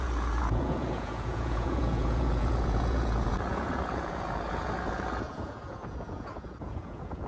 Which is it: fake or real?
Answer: fake